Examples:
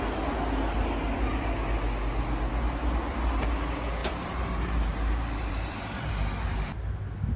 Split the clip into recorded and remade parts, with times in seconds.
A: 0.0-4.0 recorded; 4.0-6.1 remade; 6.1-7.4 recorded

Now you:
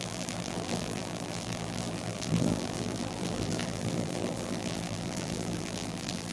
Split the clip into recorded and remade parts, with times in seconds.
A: 0.0-6.3 remade

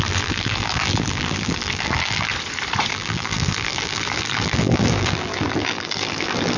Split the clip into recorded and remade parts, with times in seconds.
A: 0.0-2.3 remade; 2.3-2.9 recorded; 2.9-6.6 remade

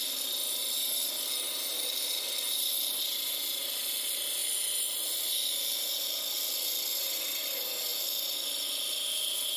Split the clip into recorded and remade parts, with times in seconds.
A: 0.0-9.6 recorded

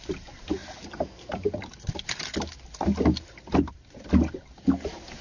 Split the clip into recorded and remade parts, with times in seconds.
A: 0.0-5.2 recorded